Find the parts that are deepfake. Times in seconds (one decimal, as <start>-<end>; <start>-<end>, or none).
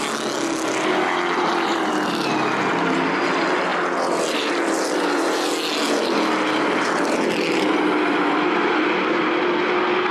1.7-2.3